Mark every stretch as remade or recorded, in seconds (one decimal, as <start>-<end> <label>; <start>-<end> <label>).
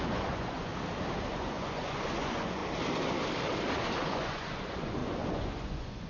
0.0-0.7 remade; 0.7-1.3 recorded; 1.3-2.6 remade; 2.6-4.1 recorded; 4.1-6.1 remade